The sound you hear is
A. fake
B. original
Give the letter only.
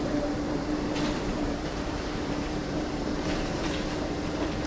A